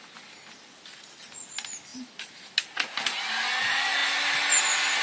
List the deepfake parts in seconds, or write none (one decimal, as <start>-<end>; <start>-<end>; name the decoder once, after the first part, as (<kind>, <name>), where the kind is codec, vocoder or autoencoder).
none